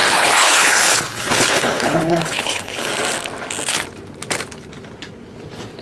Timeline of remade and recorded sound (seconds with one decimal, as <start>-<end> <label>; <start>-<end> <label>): 0.0-2.9 remade; 2.9-5.8 recorded